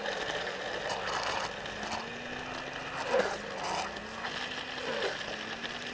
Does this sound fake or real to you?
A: real